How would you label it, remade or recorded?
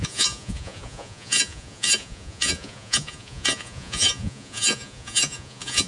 remade